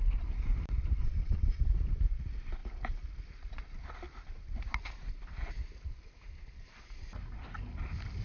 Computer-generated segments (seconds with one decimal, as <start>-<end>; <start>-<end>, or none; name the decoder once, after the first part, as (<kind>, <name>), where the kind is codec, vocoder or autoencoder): 1.0-1.6 (vocoder, WaveNeXt)